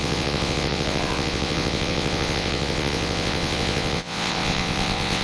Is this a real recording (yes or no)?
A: no